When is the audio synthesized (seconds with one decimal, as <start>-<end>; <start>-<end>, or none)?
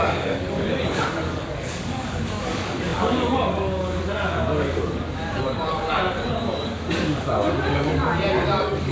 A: 0.0-8.0; 8.5-8.9